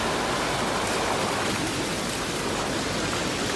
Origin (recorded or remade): recorded